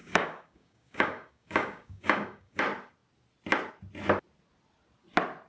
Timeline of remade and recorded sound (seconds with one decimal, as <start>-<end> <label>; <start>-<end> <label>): 0.0-2.6 remade; 2.6-5.5 recorded